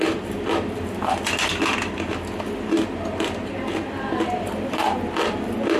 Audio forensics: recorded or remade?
remade